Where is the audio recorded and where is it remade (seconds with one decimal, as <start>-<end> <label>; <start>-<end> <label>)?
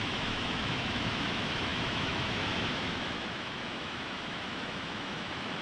0.0-5.6 remade